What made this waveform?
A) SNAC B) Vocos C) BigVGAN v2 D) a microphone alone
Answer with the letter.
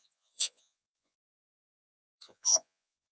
B